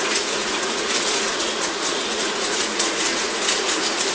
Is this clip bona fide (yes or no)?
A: no